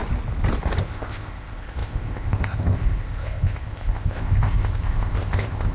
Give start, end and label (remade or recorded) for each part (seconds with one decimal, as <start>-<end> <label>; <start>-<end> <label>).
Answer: 0.0-0.8 recorded; 0.8-5.7 remade

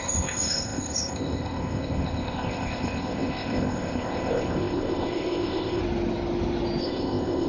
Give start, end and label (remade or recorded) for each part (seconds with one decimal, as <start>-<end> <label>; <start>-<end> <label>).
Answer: 0.0-5.8 remade; 5.8-6.8 recorded; 6.8-7.5 remade

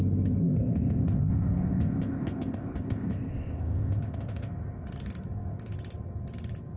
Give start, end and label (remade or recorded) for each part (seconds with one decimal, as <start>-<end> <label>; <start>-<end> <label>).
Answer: 0.0-0.4 recorded; 0.4-4.5 remade; 4.5-6.8 recorded

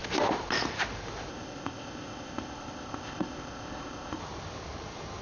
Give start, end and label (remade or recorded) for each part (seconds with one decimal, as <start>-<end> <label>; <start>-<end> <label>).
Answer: 0.0-1.3 recorded; 1.3-4.2 remade; 4.2-5.2 recorded